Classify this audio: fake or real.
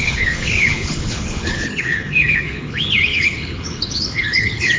fake